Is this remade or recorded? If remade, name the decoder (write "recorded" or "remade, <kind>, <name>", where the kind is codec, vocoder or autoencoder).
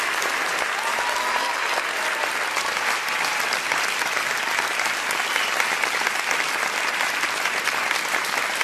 recorded